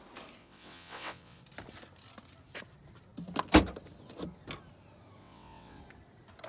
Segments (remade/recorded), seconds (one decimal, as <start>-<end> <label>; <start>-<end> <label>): 0.0-0.4 recorded; 0.4-1.4 remade; 1.4-5.2 recorded; 5.2-5.8 remade; 5.8-6.5 recorded